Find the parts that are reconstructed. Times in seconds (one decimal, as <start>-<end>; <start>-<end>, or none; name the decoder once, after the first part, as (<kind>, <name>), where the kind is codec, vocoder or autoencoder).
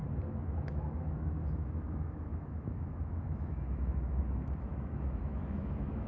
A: 0.6-6.1 (autoencoder, DAC-VAE)